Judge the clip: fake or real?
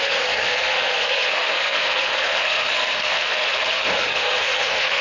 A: fake